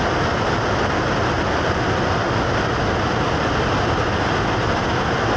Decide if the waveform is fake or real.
real